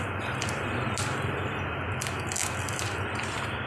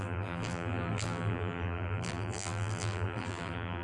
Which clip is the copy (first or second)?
second